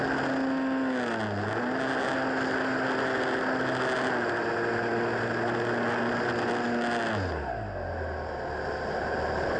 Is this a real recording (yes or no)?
yes